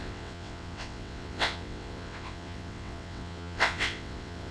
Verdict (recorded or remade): remade